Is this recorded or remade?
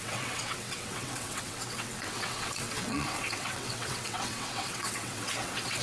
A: remade